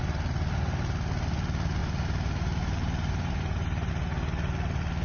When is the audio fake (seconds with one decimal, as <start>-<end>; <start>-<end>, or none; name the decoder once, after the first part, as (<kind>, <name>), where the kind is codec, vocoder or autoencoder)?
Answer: 1.8-3.9 (vocoder, BigVGAN v2)